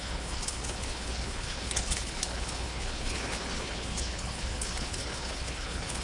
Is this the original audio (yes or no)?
no